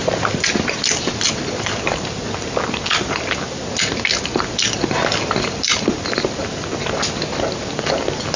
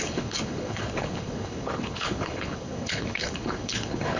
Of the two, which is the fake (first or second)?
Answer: second